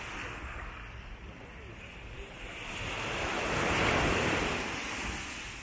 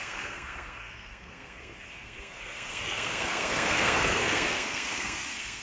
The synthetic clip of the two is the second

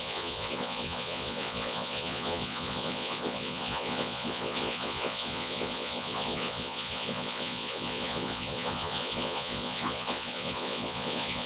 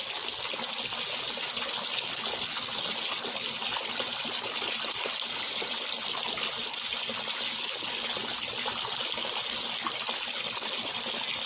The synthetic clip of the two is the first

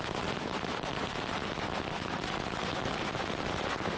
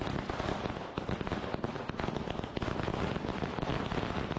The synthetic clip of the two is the first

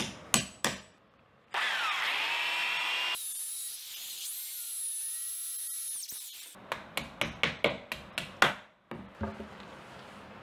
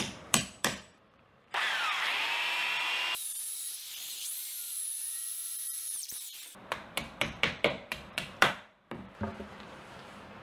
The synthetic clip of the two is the second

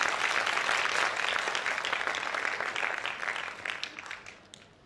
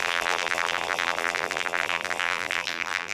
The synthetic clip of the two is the second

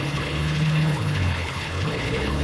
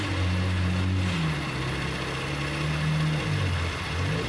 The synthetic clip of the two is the first